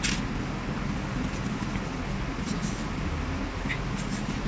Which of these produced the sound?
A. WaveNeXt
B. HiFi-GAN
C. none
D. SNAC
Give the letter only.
C